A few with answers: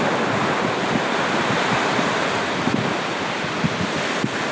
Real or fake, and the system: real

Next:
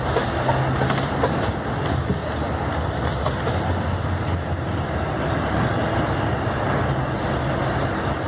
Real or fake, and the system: real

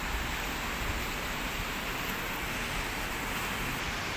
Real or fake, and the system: real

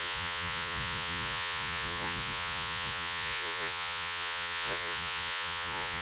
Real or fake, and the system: fake, vocoder, Vocos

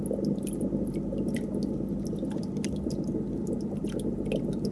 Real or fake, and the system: real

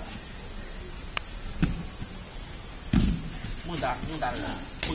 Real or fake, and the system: real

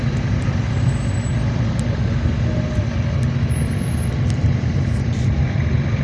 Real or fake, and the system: real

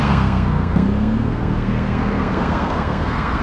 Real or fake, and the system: fake, codec, SNAC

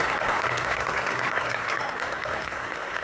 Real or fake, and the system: fake, codec, SNAC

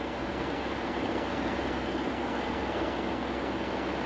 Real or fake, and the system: fake, codec, SNAC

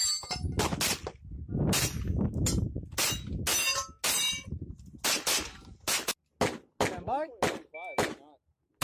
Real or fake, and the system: real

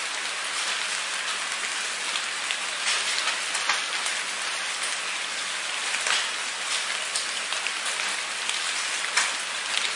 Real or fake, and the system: real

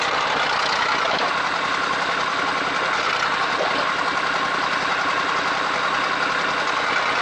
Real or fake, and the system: real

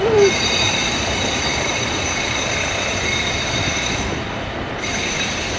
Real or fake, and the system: fake, vocoder, BigVGAN v2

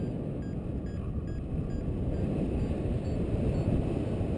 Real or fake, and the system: real